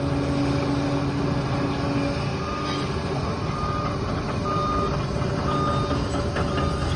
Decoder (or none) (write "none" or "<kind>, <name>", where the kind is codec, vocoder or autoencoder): none